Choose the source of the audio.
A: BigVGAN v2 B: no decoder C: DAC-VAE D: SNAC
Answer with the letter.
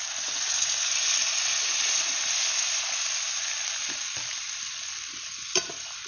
A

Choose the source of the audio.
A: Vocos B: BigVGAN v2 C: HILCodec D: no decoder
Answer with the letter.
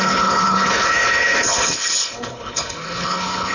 C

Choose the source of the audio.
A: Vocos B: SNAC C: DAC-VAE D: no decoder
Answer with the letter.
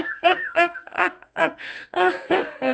B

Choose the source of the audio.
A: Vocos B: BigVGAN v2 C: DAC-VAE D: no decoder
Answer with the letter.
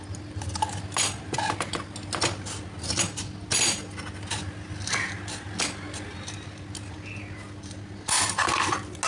D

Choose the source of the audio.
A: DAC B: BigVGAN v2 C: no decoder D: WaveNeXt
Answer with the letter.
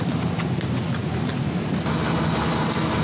C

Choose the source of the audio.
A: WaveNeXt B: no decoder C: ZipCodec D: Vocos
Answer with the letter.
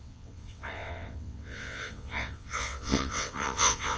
A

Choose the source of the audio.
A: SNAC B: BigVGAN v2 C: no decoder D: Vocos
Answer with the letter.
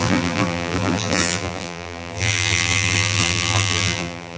B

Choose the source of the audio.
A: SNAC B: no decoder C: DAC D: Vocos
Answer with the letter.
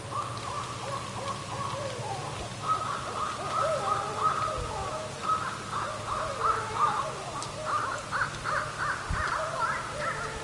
B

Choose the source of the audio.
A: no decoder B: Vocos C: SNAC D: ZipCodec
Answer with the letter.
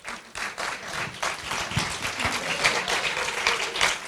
A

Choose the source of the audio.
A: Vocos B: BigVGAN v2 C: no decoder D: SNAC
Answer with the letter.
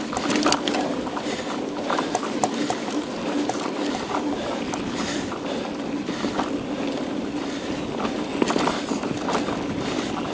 C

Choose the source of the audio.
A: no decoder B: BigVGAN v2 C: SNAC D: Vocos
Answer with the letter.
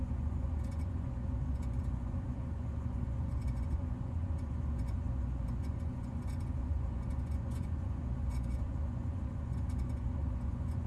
D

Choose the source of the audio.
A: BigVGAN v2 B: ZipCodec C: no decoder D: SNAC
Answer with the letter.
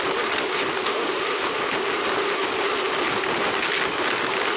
C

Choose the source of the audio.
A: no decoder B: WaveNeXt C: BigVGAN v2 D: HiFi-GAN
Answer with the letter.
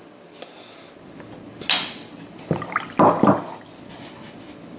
A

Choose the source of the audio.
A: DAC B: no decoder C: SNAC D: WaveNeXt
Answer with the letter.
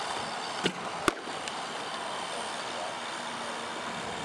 B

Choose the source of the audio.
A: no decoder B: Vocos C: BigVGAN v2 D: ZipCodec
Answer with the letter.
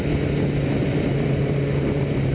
A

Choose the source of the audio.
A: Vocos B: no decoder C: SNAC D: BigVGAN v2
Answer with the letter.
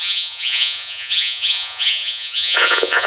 A